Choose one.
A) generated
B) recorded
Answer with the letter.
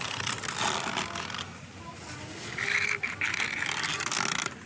B